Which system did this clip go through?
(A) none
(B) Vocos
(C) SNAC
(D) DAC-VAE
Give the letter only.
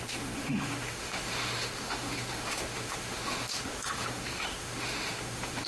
D